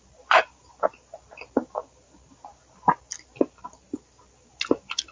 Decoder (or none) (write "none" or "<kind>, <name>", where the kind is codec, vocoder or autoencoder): none